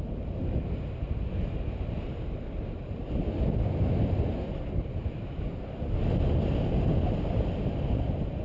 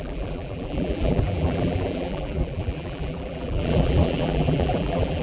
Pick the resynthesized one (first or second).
second